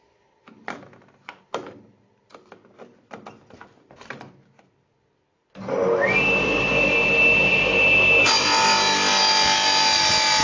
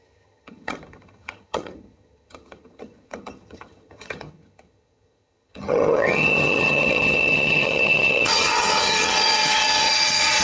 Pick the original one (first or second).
first